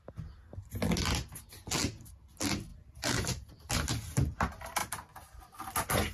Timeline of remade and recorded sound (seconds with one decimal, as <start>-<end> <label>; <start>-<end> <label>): 0.0-2.7 recorded; 2.7-3.7 remade; 3.7-4.8 recorded; 4.8-5.4 remade; 5.4-6.1 recorded